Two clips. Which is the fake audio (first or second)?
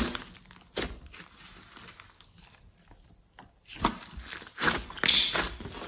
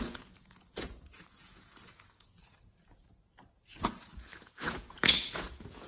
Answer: second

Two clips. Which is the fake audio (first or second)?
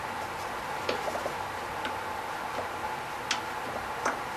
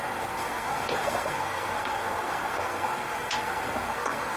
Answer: second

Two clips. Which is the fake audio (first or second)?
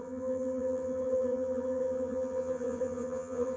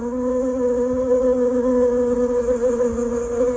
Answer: first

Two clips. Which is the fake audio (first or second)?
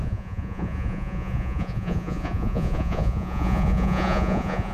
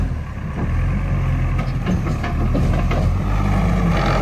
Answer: first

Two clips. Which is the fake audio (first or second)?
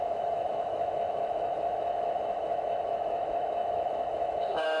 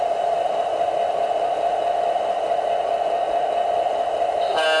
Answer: first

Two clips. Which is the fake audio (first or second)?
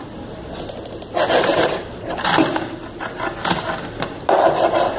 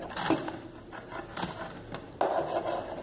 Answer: first